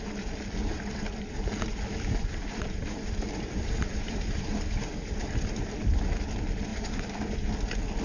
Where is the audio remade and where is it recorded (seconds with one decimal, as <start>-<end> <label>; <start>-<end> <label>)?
0.0-0.6 recorded; 0.6-5.4 remade; 5.4-6.7 recorded; 6.7-7.5 remade; 7.5-8.0 recorded